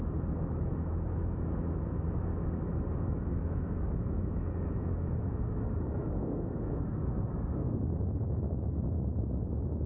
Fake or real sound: fake